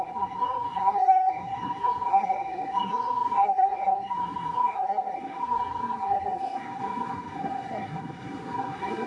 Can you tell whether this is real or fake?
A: fake